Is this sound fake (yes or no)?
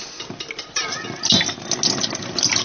no